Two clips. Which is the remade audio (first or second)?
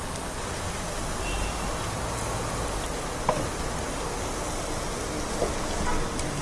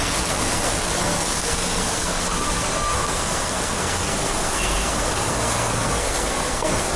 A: second